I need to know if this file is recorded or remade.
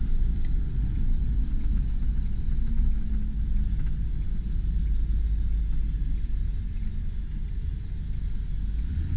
recorded